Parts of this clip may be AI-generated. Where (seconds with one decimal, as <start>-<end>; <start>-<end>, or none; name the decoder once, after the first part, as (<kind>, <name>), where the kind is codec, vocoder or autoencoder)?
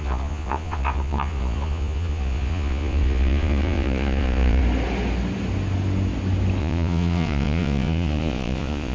0.0-4.6 (vocoder, Vocos); 6.6-8.9